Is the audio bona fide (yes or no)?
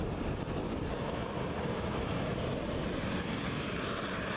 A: yes